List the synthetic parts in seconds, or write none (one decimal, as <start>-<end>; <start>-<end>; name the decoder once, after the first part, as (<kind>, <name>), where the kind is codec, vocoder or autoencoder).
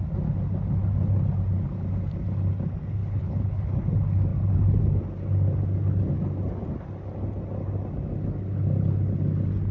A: 3.0-3.7 (codec, HILCodec)